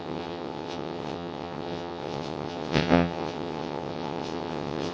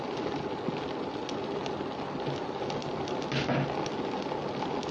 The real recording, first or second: second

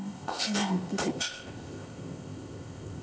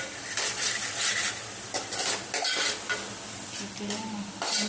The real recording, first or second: second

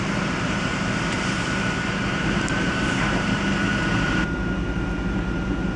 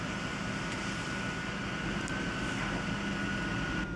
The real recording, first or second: second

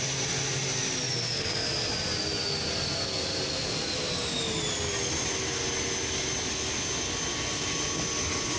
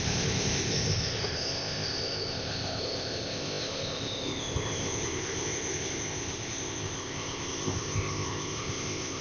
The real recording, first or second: first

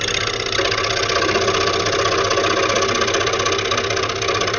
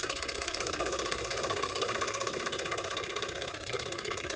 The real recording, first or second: first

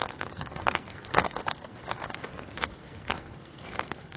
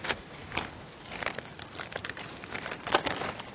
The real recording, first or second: second